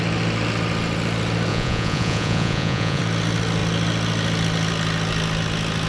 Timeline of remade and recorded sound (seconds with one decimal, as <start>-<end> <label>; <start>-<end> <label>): 0.0-1.5 recorded; 1.5-3.0 remade; 3.0-5.9 recorded

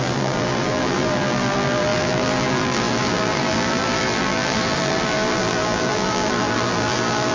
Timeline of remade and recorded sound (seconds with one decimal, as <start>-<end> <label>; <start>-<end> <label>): 0.0-7.3 remade

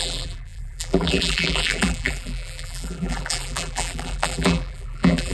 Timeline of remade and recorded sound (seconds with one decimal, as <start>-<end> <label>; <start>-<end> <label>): 0.0-5.3 remade

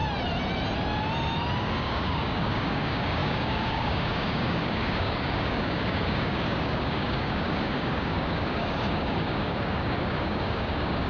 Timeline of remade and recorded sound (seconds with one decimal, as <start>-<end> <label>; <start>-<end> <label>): 0.0-1.6 recorded; 1.6-11.1 remade

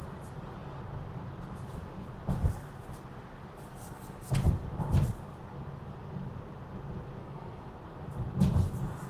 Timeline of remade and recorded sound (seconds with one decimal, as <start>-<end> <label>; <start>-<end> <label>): 0.0-3.7 recorded; 3.7-4.3 remade; 4.3-7.2 recorded; 7.2-7.7 remade; 7.7-9.1 recorded